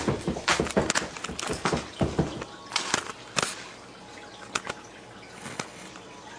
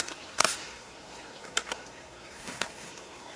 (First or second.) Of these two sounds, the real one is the first